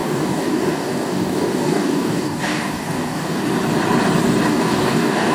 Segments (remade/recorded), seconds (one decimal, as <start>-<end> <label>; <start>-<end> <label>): 0.0-3.4 remade; 3.4-4.5 recorded; 4.5-5.3 remade